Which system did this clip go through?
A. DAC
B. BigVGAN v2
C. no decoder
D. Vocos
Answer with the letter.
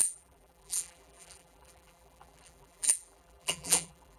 B